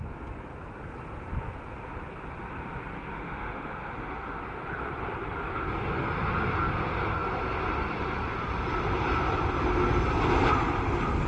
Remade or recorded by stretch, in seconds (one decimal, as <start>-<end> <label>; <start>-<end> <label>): 0.0-3.1 recorded; 3.1-4.4 remade; 4.4-11.3 recorded